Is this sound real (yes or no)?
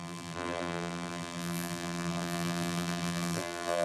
no